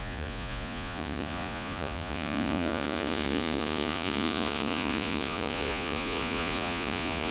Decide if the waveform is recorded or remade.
remade